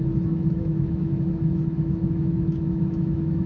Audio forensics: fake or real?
fake